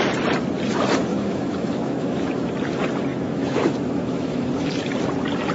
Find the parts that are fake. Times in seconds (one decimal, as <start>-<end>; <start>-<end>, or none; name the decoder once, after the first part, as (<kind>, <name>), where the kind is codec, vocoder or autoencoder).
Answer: 1.1-2.5 (autoencoder, DAC-VAE); 3.1-4.7